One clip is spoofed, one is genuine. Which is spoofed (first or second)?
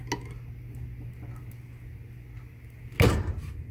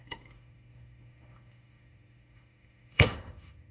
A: second